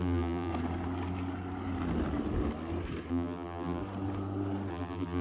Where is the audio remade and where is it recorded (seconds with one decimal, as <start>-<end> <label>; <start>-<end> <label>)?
0.0-0.5 remade; 0.5-3.1 recorded; 3.1-3.8 remade; 3.8-4.7 recorded; 4.7-5.2 remade